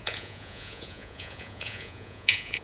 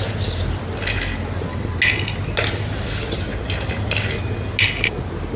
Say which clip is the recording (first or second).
second